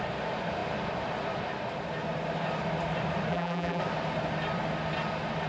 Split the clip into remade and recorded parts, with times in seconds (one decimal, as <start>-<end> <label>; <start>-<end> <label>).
0.0-3.3 recorded; 3.3-3.8 remade; 3.8-5.5 recorded